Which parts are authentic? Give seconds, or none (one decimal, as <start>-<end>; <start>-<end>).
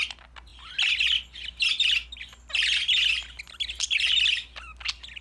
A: 0.0-5.2